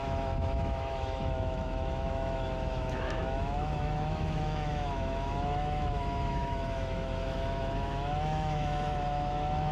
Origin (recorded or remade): remade